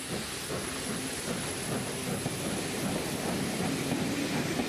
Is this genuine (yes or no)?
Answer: yes